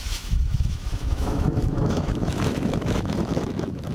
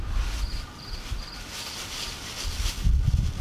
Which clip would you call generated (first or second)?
first